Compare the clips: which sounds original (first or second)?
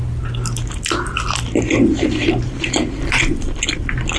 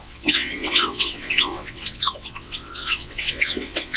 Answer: first